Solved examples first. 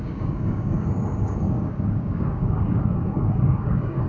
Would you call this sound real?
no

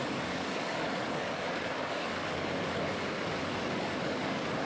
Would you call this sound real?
no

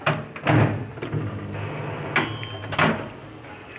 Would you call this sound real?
yes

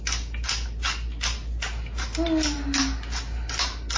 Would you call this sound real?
yes